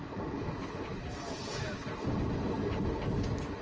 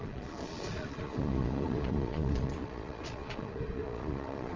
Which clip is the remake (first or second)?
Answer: second